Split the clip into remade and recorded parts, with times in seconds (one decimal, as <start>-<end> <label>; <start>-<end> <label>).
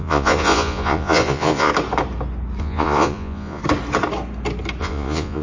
0.0-1.7 remade; 1.7-2.6 recorded; 2.6-3.6 remade; 3.6-4.8 recorded; 4.8-5.4 remade